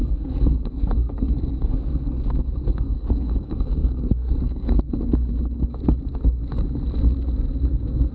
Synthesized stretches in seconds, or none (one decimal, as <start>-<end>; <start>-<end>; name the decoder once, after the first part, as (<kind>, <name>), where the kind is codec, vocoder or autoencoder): 0.0-4.9 (codec, SNAC)